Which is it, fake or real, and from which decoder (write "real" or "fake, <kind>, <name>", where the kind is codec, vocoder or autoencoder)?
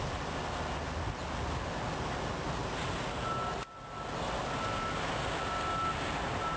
real